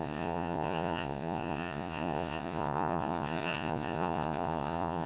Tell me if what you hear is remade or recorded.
remade